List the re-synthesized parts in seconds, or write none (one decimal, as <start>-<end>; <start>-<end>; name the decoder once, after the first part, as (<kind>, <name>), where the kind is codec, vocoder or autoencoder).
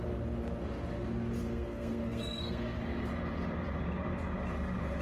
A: 1.4-2.8 (codec, SNAC)